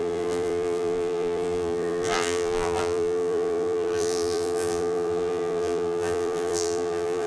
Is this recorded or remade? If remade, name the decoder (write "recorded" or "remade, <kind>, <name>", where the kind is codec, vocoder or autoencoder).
remade, vocoder, BigVGAN v2